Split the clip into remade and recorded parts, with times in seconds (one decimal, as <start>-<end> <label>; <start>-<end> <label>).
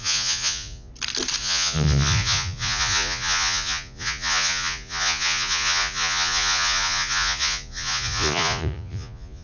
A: 0.0-0.9 remade; 0.9-1.4 recorded; 1.4-9.4 remade